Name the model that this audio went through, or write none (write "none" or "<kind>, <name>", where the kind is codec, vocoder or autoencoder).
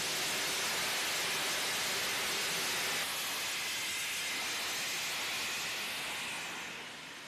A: none